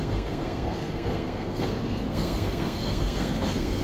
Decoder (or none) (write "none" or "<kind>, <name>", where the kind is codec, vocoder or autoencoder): codec, SNAC